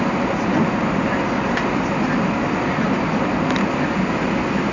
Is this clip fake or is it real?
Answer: real